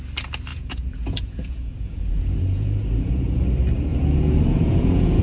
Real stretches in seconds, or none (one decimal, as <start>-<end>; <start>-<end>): 0.0-0.5; 3.4-3.9